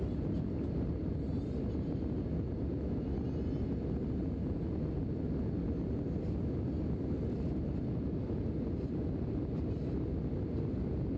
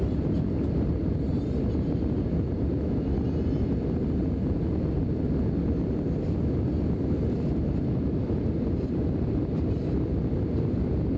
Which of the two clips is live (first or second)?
first